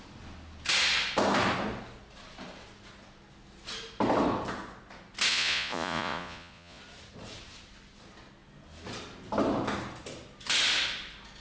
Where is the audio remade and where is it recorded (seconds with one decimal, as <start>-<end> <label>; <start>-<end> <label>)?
0.0-5.3 recorded; 5.3-6.8 remade; 6.8-11.4 recorded